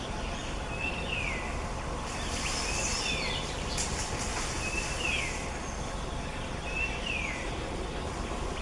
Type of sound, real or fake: real